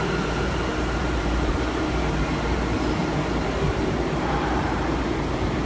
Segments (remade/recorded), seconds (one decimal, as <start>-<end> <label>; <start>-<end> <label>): 0.0-3.0 remade; 3.0-3.7 recorded; 3.7-5.7 remade